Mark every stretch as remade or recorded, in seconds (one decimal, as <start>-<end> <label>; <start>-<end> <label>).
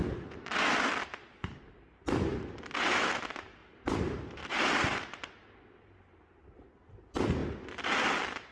0.0-0.9 remade; 0.9-3.6 recorded; 3.6-5.6 remade; 5.6-8.5 recorded